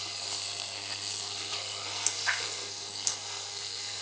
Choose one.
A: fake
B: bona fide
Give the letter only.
A